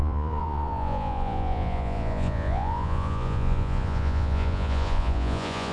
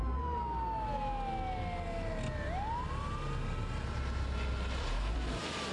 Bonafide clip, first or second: second